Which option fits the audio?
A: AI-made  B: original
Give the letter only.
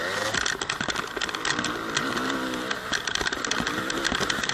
B